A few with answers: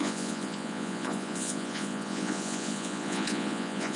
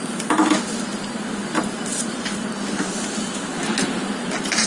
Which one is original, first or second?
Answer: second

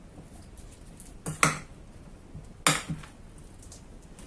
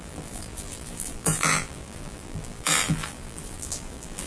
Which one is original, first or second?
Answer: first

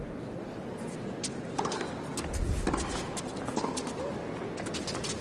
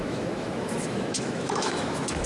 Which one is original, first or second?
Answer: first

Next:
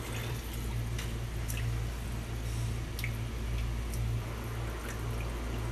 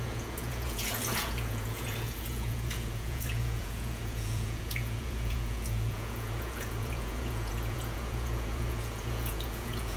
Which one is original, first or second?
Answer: first